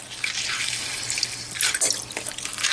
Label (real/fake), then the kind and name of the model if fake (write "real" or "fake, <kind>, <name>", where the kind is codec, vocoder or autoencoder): real